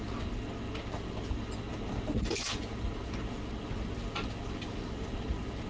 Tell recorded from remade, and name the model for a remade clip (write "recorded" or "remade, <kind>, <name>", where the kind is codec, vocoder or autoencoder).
recorded